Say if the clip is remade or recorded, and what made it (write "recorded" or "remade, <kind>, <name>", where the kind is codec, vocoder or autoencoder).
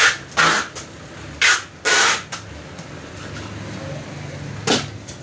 recorded